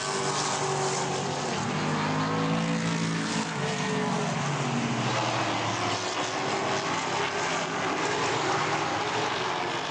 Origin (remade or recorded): recorded